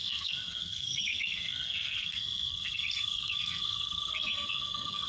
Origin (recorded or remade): remade